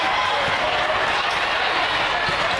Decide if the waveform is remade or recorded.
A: recorded